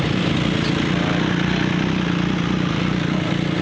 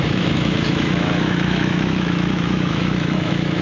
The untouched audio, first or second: first